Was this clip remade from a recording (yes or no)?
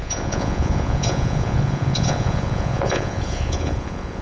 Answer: yes